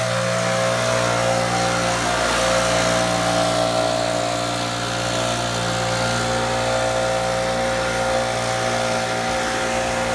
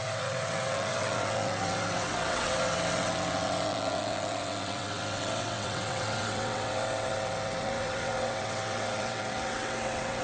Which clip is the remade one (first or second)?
second